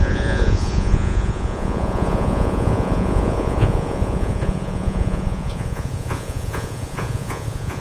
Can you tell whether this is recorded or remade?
remade